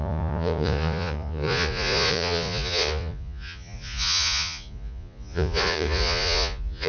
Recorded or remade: remade